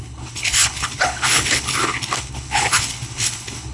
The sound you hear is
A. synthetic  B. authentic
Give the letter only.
A